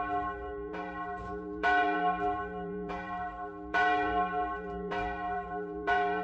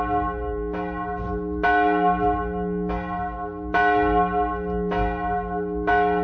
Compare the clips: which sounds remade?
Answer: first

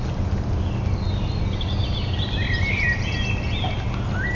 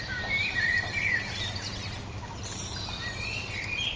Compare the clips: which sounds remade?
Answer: second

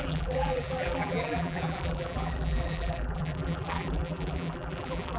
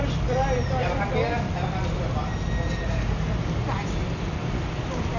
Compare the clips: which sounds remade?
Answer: first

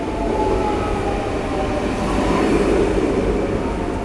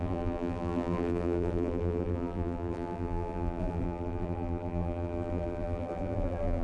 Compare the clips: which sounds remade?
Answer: second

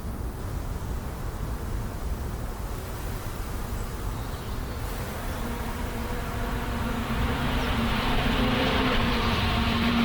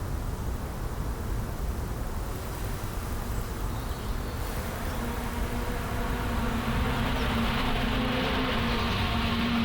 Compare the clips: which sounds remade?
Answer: first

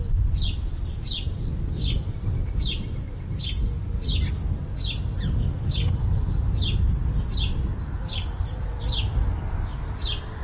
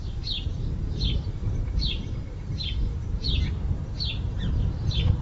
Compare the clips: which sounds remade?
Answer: second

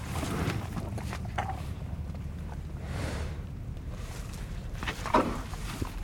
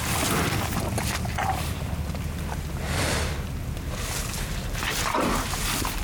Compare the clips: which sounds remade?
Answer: first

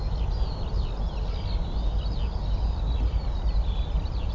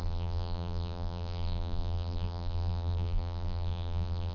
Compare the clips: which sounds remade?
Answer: second